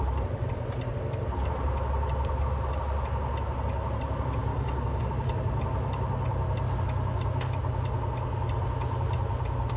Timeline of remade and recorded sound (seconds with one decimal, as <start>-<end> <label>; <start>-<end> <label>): 0.0-4.5 recorded; 4.5-5.1 remade; 5.1-9.8 recorded